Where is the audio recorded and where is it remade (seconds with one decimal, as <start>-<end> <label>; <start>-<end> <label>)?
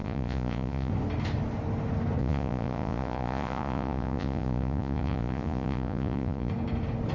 0.0-0.9 remade; 0.9-2.2 recorded; 2.2-6.5 remade; 6.5-7.1 recorded